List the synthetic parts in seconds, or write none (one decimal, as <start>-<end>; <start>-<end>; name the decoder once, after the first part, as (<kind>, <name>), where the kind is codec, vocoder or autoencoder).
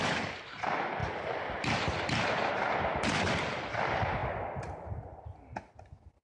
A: none